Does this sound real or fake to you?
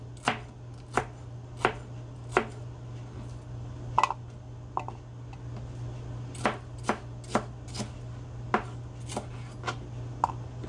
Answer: real